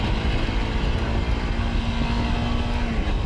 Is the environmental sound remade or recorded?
recorded